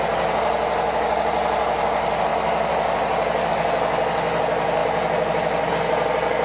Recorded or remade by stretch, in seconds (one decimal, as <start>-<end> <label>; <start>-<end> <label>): 0.0-6.4 recorded